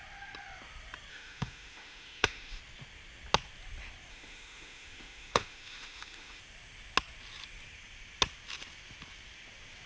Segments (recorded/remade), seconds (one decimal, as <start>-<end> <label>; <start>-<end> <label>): 0.0-1.1 recorded; 1.1-2.6 remade; 2.6-4.1 recorded; 4.1-6.4 remade; 6.4-9.9 recorded